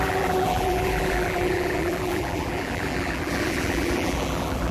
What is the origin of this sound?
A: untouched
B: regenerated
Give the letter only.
B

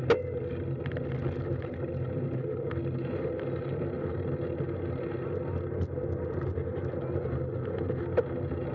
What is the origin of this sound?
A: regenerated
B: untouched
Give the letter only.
B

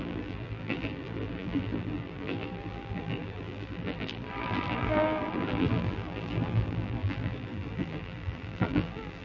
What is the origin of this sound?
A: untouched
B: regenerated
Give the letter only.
B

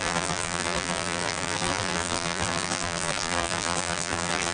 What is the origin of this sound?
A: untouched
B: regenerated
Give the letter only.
B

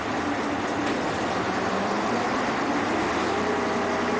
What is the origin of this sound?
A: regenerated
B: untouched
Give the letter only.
B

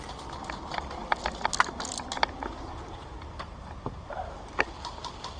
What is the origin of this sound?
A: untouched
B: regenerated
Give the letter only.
A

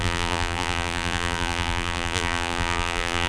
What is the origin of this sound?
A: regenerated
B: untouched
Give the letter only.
A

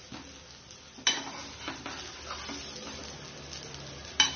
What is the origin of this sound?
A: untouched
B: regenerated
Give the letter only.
A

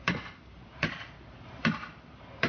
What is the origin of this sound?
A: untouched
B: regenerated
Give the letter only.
B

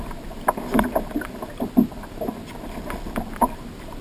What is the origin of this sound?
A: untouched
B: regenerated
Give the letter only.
A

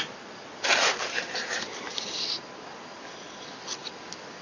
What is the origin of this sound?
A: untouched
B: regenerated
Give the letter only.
B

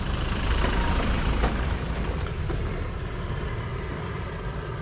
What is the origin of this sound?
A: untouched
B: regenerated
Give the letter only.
B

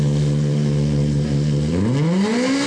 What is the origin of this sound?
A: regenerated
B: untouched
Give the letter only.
B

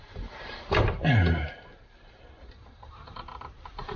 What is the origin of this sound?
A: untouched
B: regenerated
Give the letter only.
B